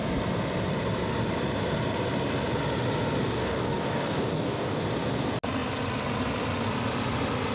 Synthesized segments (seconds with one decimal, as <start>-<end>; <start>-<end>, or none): 3.2-4.8